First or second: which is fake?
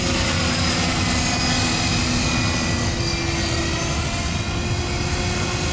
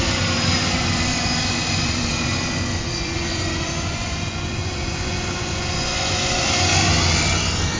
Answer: second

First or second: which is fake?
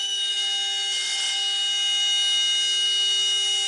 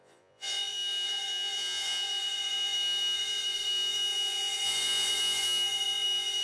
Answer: second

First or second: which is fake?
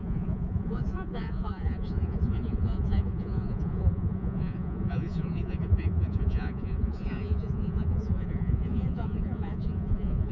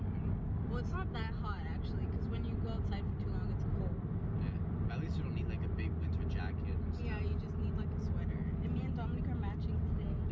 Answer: first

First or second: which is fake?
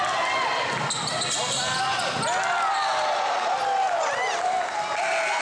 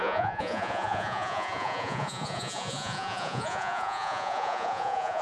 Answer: second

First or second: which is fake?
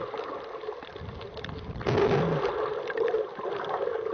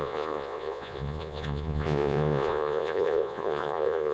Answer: second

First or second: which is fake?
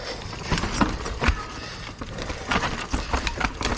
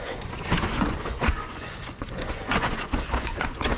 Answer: second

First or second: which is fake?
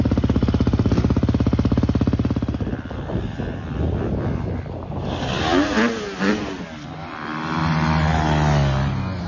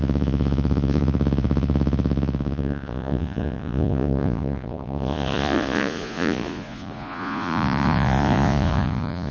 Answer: second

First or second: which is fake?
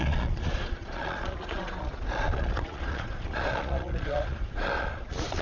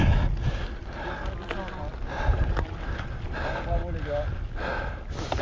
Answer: first